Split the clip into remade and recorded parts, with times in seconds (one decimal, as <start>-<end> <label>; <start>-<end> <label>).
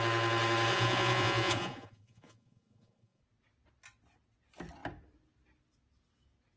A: 0.0-0.7 recorded; 0.7-3.2 remade; 3.2-6.6 recorded